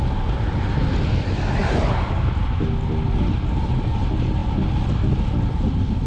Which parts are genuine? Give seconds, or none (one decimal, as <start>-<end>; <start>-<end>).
0.0-6.1